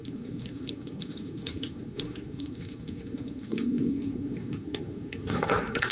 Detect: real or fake fake